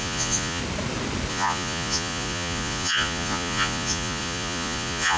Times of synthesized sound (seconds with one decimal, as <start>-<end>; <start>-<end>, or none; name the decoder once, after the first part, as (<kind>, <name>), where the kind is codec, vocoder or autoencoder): 0.0-0.6 (vocoder, Vocos); 1.3-5.2